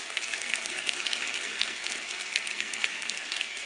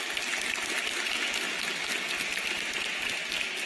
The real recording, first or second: second